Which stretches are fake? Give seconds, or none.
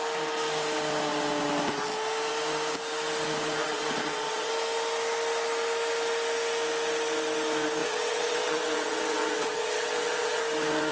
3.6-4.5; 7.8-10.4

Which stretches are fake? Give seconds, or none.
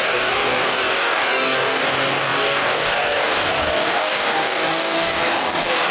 0.0-5.9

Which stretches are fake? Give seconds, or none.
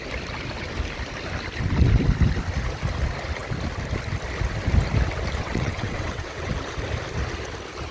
5.4-6.5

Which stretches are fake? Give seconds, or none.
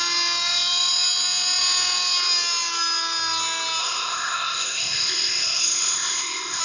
3.8-6.6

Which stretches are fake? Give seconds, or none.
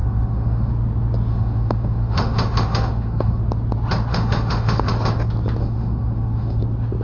0.0-0.7; 1.3-3.4; 4.1-4.9; 5.6-6.6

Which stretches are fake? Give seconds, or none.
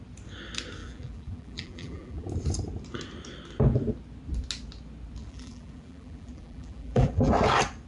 0.8-2.3; 5.2-7.3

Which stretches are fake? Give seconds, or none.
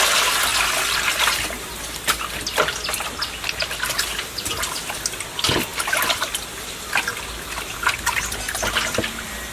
none